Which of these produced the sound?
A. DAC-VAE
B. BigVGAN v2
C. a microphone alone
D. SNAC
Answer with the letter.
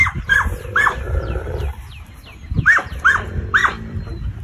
B